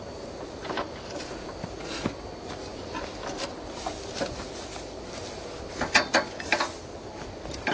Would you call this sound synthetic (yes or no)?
no